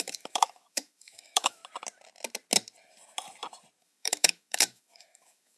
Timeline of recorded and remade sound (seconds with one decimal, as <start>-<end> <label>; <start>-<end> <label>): 0.0-1.6 remade; 1.6-3.8 recorded; 3.8-5.6 remade